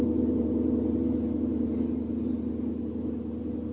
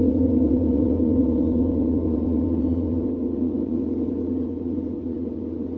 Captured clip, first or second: first